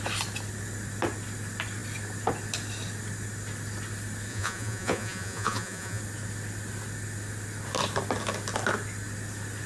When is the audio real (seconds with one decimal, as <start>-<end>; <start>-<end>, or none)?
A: 0.0-4.3; 6.0-9.7